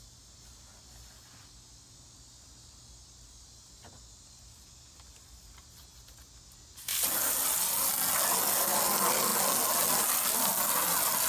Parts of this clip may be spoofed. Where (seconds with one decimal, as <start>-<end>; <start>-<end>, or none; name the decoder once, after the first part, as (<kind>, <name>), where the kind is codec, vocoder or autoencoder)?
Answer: none